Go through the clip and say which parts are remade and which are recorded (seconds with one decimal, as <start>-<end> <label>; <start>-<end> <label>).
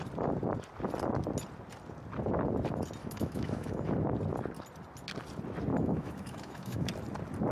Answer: 0.0-3.0 recorded; 3.0-3.9 remade; 3.9-5.7 recorded; 5.7-6.9 remade; 6.9-7.5 recorded